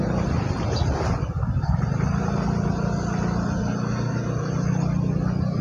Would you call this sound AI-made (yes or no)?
no